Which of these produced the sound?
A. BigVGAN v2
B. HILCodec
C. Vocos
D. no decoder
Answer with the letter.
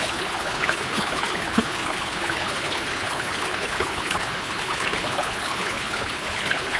B